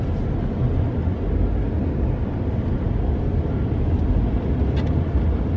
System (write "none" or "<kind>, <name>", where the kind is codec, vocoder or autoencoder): none